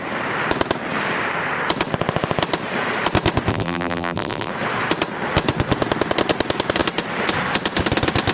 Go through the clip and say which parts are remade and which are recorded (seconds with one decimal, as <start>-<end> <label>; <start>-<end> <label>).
0.0-3.5 recorded; 3.5-4.5 remade; 4.5-8.3 recorded